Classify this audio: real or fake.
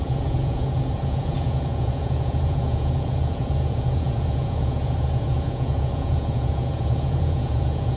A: fake